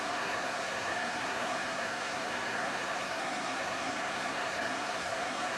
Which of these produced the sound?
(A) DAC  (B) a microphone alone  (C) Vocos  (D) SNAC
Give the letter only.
D